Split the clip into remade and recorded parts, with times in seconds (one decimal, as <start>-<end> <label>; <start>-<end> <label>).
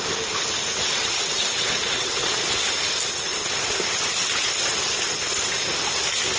0.0-0.8 recorded; 0.8-2.6 remade; 2.6-6.4 recorded